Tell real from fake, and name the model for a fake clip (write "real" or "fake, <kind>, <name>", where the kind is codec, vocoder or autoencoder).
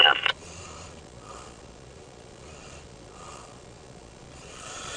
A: fake, vocoder, Vocos